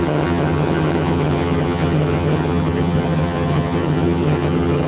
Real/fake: fake